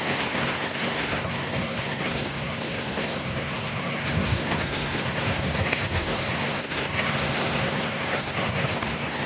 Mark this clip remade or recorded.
remade